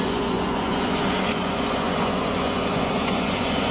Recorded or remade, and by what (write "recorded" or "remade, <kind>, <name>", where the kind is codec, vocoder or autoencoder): remade, vocoder, Vocos